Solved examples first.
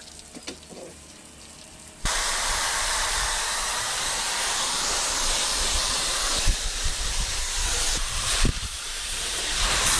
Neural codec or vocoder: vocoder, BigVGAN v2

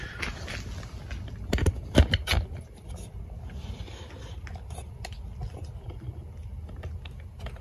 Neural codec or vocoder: none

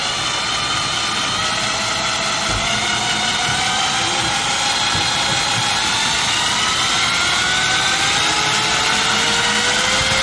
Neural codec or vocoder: none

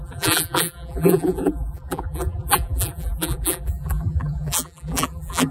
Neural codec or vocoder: vocoder, BigVGAN v2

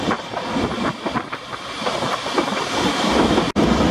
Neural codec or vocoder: none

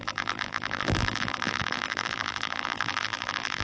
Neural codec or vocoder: vocoder, BigVGAN v2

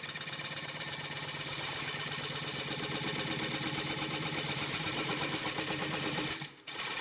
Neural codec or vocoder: vocoder, BigVGAN v2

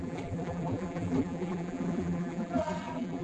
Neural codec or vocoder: vocoder, BigVGAN v2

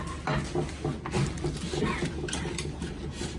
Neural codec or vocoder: none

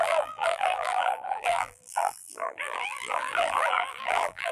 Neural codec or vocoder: vocoder, BigVGAN v2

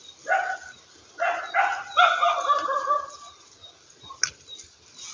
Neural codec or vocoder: none